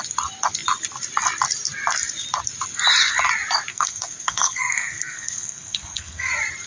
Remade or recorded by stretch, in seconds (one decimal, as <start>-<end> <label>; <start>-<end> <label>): 0.0-3.7 recorded; 3.7-6.3 remade; 6.3-6.7 recorded